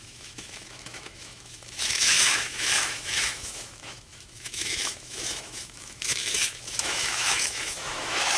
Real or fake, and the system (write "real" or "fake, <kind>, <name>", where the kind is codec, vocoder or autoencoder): fake, autoencoder, DAC-VAE